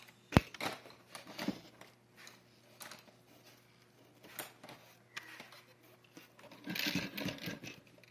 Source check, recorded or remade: recorded